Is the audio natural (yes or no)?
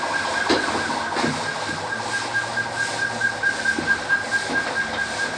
yes